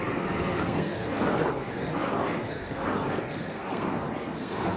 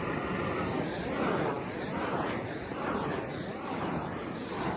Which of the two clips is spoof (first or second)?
first